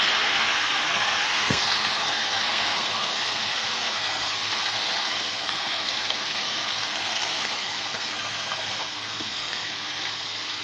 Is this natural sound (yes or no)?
no